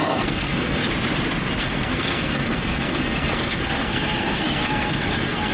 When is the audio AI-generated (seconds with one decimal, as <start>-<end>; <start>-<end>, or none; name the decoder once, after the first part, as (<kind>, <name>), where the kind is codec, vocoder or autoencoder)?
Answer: 0.0-0.8 (codec, SNAC); 1.6-5.5